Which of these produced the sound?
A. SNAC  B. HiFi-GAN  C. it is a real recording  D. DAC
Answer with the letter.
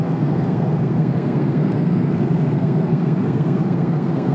A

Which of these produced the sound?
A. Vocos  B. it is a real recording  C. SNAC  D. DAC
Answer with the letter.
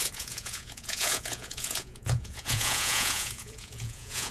A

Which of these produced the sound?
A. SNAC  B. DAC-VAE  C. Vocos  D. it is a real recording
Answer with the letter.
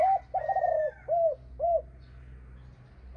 D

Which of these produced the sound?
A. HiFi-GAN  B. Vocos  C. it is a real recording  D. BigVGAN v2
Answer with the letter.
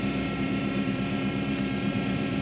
D